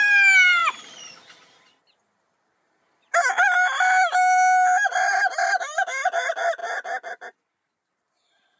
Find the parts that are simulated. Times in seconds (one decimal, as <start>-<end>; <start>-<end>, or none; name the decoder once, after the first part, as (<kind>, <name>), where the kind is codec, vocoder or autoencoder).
none